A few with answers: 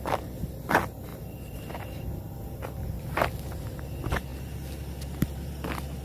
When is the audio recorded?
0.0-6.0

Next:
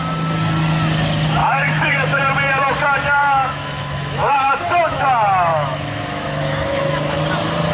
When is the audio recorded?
0.0-1.4; 2.2-3.2; 5.0-5.5; 7.2-7.7

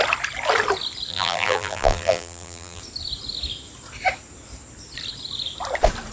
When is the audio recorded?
0.0-1.1; 2.8-6.1

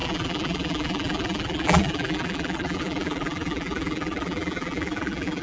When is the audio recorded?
none

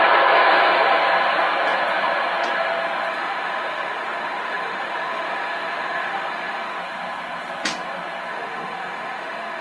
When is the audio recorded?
0.0-3.1; 6.8-8.3

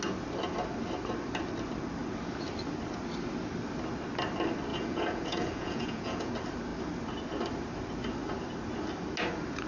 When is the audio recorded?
0.0-4.7; 6.3-9.7